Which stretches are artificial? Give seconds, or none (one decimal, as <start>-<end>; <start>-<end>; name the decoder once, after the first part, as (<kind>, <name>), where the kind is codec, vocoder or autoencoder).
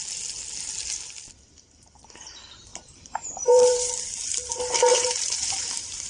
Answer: 2.7-3.9 (vocoder, BigVGAN v2); 4.9-6.1